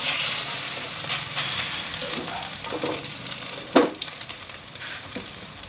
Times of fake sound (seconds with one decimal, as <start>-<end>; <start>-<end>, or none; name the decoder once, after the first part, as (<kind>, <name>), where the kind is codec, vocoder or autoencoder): 3.8-5.7 (vocoder, BigVGAN v2)